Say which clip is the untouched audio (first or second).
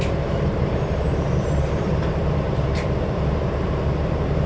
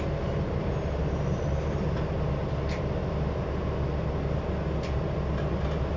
second